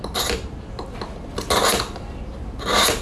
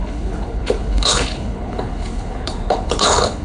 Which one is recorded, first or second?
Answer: first